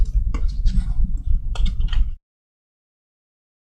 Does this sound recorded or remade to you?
recorded